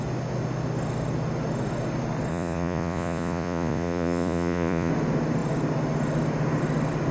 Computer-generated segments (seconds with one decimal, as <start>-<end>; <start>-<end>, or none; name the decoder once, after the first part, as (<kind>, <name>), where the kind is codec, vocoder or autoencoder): 2.3-4.9 (vocoder, Vocos)